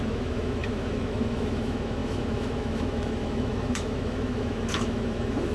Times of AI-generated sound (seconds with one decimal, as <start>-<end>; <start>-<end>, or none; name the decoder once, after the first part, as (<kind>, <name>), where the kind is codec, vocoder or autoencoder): 0.0-5.5 (autoencoder, DAC-VAE)